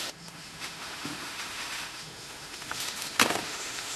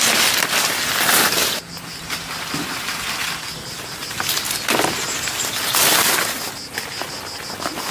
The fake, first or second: first